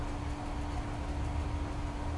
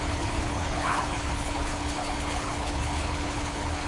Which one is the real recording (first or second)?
first